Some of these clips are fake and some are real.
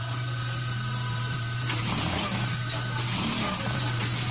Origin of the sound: fake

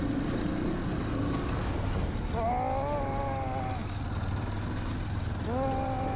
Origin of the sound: real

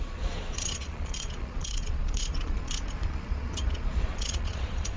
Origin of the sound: fake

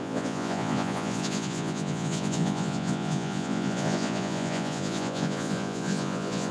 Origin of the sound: fake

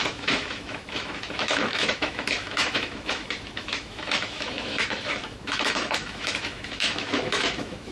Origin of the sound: fake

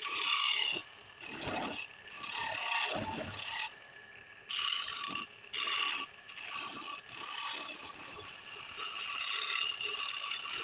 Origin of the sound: real